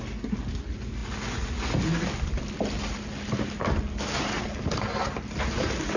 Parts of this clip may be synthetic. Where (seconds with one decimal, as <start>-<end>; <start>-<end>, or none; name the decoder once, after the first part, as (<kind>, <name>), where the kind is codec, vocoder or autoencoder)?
none